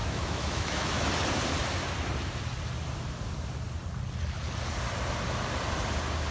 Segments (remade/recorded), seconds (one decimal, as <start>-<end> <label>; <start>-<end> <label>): 0.0-1.1 remade; 1.1-6.3 recorded